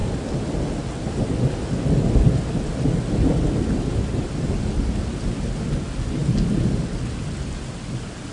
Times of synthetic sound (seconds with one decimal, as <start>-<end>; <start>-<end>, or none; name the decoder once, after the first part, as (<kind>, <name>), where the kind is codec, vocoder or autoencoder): none